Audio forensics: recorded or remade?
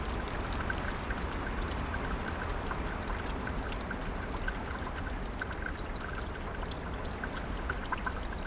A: recorded